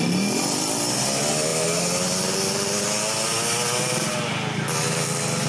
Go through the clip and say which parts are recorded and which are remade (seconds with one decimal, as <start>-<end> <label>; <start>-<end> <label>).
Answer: 0.0-5.5 recorded